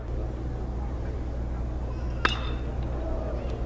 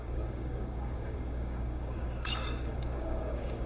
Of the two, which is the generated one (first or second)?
second